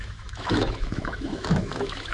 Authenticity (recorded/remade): remade